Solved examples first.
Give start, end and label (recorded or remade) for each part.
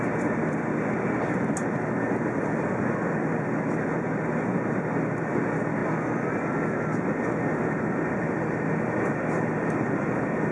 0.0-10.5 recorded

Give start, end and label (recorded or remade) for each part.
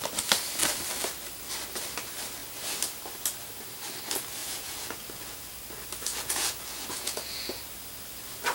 0.0-4.4 recorded; 4.4-5.5 remade; 5.5-6.1 recorded; 6.1-7.6 remade; 7.6-8.5 recorded